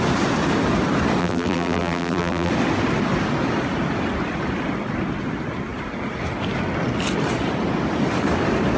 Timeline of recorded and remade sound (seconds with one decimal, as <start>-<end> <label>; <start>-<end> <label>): 0.0-1.2 recorded; 1.2-2.5 remade; 2.5-8.8 recorded